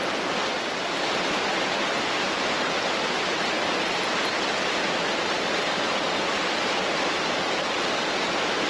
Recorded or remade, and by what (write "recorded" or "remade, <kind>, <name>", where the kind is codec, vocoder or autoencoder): recorded